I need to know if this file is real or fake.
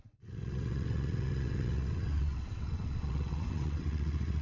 fake